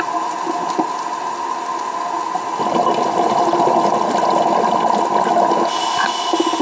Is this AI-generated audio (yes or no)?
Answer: no